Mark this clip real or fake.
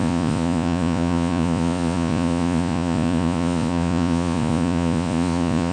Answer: fake